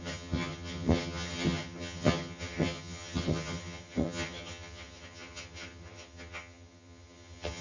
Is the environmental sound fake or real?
fake